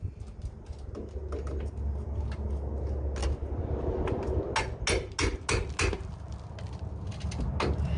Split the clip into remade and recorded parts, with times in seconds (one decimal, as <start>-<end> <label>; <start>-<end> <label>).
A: 0.0-8.0 recorded